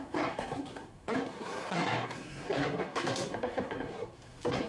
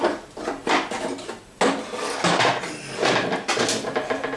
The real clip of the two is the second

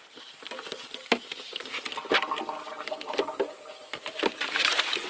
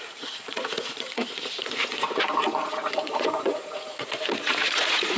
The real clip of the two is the first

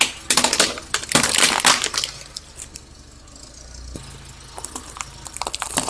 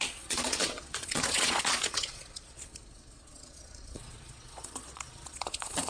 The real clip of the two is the first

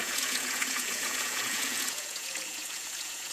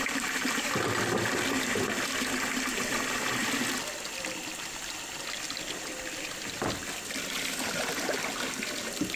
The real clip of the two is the second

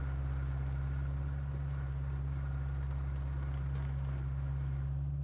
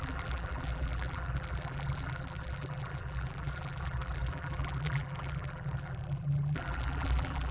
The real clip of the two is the first